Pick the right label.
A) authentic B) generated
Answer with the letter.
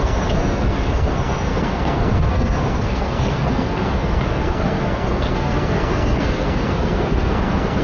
B